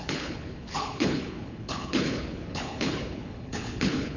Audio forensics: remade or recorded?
remade